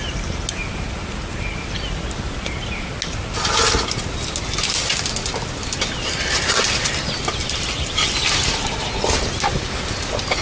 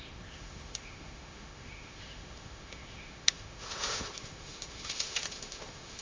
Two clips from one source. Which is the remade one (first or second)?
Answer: second